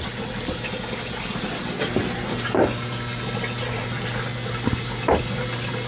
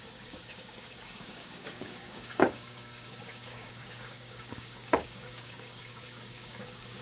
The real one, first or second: first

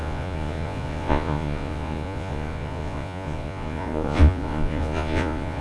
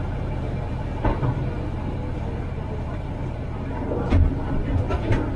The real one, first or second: second